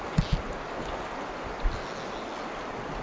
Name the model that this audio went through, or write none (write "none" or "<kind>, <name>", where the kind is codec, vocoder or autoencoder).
none